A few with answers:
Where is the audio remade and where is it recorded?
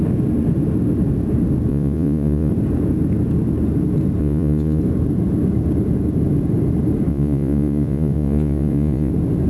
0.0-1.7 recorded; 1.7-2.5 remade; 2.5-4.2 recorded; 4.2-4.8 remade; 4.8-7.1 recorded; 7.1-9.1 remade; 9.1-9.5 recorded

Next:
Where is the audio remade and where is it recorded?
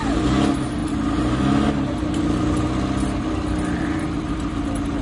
0.0-5.0 recorded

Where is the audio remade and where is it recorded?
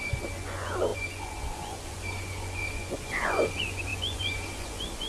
0.0-5.1 remade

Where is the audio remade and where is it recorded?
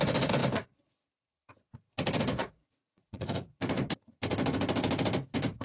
0.0-2.4 recorded; 2.4-3.6 remade; 3.6-5.6 recorded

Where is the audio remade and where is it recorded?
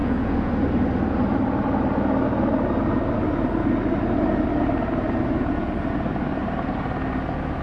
0.0-0.5 remade; 0.5-7.6 recorded